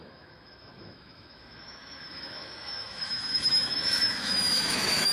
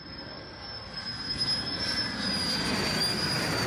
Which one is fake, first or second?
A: first